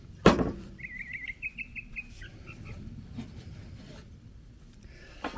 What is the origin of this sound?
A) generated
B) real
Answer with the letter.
A